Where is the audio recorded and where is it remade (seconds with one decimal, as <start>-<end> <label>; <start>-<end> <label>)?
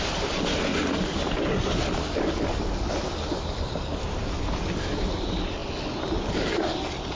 0.0-7.1 recorded